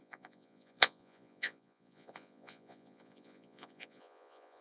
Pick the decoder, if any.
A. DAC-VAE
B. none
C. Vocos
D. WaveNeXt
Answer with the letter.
C